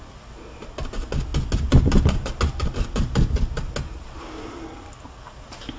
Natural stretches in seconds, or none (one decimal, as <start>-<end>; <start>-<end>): 0.0-5.8